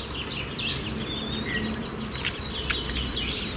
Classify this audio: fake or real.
real